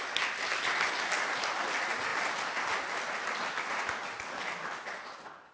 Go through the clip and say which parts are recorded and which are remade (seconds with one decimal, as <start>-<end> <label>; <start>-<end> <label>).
0.0-5.5 recorded